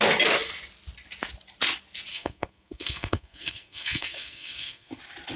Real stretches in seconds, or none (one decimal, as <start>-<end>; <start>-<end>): 0.0-2.1; 5.0-5.4